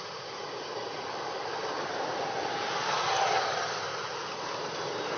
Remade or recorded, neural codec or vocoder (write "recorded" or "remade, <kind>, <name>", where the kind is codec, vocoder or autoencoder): recorded